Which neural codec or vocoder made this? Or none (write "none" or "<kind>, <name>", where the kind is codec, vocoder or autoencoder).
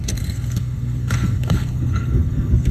codec, SNAC